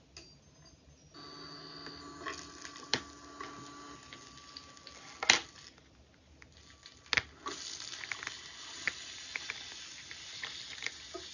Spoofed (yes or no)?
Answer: no